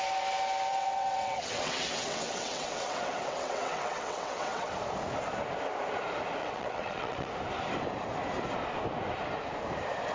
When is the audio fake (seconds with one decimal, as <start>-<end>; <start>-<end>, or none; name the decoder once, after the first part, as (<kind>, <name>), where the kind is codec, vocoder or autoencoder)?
0.7-4.7 (vocoder, WaveNeXt); 6.4-7.3

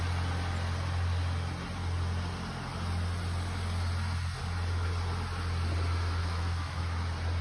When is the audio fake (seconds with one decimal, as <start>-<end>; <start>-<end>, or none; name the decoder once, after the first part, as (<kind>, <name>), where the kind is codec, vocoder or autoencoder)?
6.2-6.8 (autoencoder, DAC-VAE)

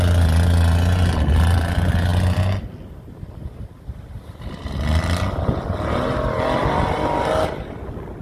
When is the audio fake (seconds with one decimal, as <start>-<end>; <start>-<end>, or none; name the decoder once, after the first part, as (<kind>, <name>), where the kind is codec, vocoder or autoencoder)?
none

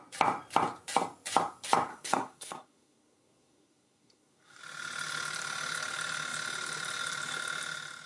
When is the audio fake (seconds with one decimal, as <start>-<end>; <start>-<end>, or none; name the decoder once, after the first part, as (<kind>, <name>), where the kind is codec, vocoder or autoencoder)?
1.9-4.6 (codec, SNAC)